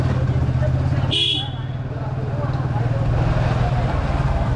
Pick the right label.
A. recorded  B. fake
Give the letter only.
A